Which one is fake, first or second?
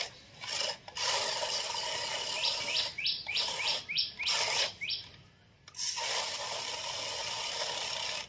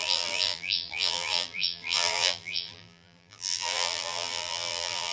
second